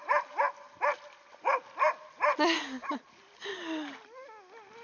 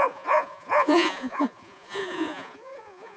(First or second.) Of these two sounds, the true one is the first